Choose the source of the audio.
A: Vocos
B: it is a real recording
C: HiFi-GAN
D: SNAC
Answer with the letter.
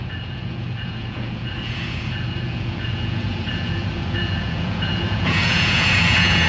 A